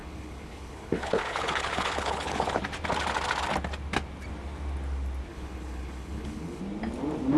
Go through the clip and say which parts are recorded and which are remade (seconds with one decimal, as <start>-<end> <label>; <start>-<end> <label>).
0.0-2.6 remade; 2.6-5.3 recorded; 5.3-6.6 remade; 6.6-7.4 recorded